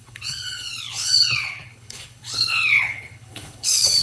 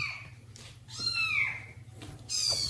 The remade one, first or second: first